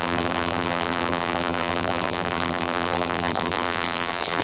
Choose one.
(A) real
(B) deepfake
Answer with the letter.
B